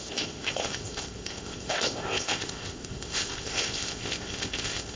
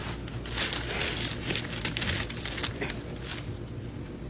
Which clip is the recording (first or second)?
second